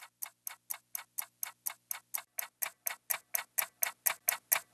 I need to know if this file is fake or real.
real